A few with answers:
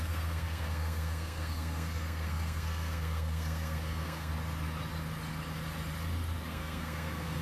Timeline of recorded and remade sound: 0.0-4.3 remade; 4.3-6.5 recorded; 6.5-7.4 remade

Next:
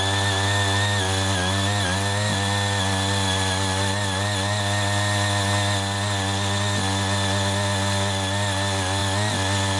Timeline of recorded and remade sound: 0.0-9.8 recorded

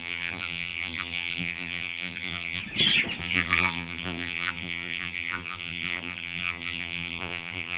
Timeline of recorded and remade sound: 0.0-2.6 remade; 2.6-3.2 recorded; 3.2-7.8 remade

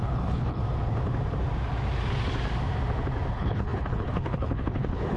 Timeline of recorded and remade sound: 0.0-0.6 remade; 0.6-3.3 recorded; 3.3-5.2 remade

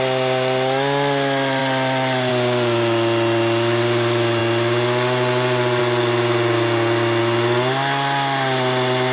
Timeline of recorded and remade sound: 0.0-9.1 recorded

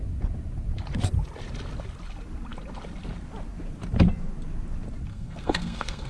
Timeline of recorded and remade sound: 0.0-5.1 recorded; 5.1-6.1 remade

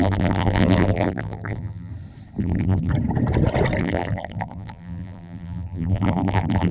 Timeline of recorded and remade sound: 0.0-1.9 remade; 1.9-2.4 recorded; 2.4-2.9 remade; 2.9-3.8 recorded; 3.8-6.7 remade

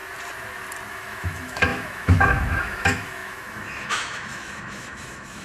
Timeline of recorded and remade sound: 0.0-0.9 recorded; 0.9-5.4 remade